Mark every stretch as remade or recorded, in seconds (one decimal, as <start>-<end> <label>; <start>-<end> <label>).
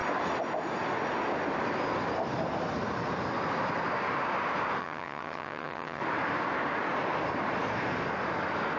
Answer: 0.0-4.8 recorded; 4.8-6.0 remade; 6.0-8.8 recorded